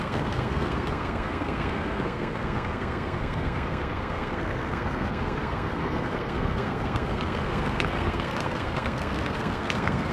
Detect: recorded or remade remade